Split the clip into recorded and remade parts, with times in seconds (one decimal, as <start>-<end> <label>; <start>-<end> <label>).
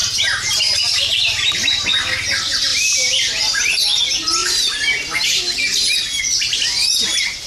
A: 0.0-1.5 remade; 1.5-2.7 recorded; 2.7-4.0 remade; 4.0-4.4 recorded; 4.4-6.2 remade; 6.2-7.5 recorded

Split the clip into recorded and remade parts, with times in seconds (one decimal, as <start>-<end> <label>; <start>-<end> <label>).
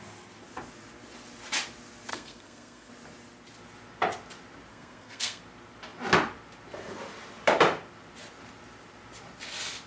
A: 0.0-2.1 recorded; 2.1-2.9 remade; 2.9-4.7 recorded; 4.7-5.4 remade; 5.4-9.9 recorded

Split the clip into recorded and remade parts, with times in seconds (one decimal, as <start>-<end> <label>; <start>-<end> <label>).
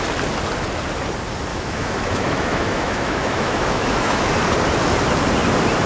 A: 0.0-1.5 recorded; 1.5-4.3 remade; 4.3-5.9 recorded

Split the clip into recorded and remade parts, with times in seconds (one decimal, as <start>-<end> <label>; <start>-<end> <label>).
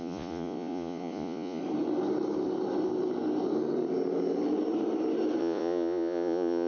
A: 0.0-1.6 remade; 1.6-5.4 recorded; 5.4-6.7 remade